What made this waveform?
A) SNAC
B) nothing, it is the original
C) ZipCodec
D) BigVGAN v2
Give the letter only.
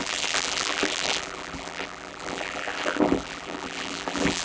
D